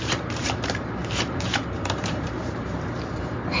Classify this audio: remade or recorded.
remade